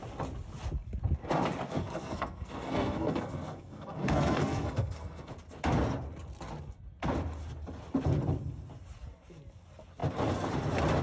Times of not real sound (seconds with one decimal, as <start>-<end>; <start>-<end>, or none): 1.7-5.3